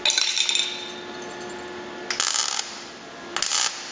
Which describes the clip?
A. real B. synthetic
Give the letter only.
A